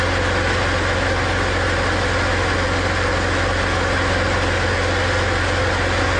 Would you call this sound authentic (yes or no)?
yes